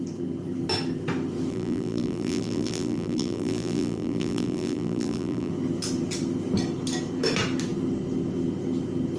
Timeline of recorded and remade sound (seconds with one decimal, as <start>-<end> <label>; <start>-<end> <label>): 0.0-1.5 recorded; 1.5-5.5 remade; 5.5-9.2 recorded